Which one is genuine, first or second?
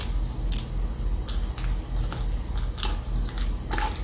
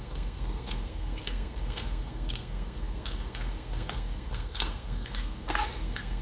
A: first